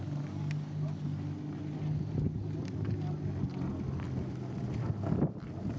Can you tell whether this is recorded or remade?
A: recorded